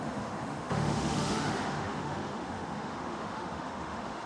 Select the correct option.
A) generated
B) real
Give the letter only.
A